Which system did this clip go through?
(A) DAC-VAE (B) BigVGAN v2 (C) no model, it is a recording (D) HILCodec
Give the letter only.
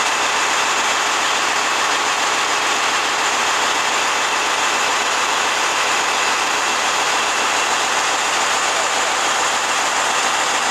C